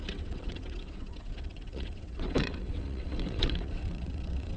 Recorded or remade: remade